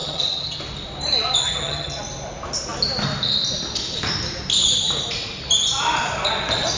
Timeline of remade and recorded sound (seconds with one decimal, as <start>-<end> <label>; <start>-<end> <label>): 0.0-0.6 remade; 0.6-1.4 recorded; 1.4-2.0 remade; 2.0-6.8 recorded